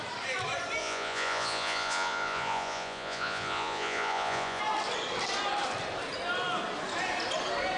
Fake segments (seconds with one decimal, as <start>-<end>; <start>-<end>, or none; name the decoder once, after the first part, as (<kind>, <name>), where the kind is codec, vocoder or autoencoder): 0.8-4.6 (vocoder, Vocos)